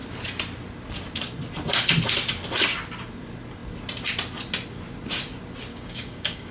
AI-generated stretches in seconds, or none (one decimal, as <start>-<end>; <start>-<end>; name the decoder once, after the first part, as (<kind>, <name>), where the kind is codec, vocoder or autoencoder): 5.7-6.5 (codec, DAC)